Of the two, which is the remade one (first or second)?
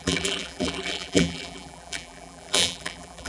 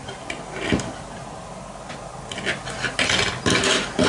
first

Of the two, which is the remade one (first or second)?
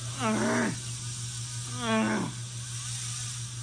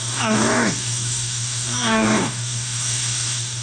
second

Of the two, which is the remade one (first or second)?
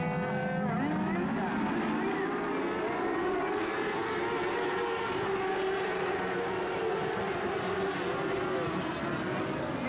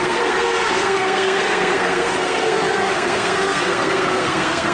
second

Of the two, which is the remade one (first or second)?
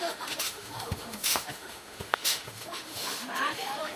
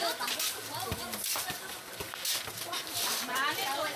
first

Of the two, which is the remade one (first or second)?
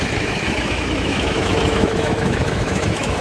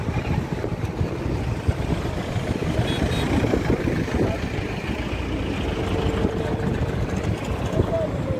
first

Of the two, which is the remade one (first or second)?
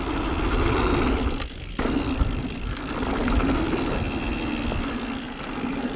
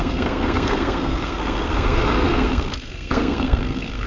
second